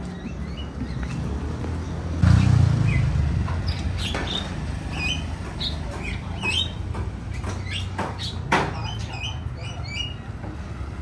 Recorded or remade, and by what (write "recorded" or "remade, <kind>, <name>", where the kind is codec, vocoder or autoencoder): recorded